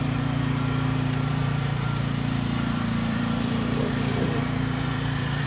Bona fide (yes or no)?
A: no